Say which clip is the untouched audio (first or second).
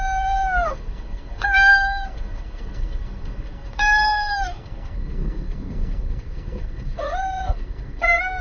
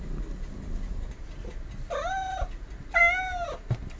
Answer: second